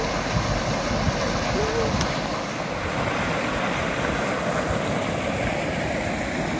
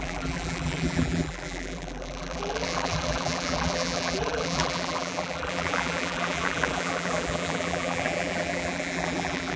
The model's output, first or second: second